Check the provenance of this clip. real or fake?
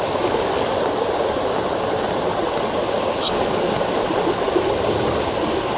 real